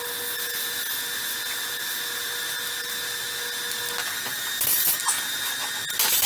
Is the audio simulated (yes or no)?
no